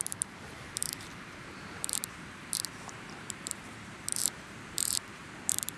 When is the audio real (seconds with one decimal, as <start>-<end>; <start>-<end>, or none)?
none